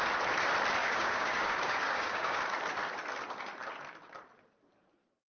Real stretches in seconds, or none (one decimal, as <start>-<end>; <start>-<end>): 0.0-0.8; 2.4-5.3